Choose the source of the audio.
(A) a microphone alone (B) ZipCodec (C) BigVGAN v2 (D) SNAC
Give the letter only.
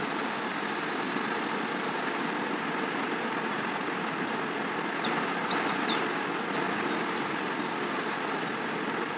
A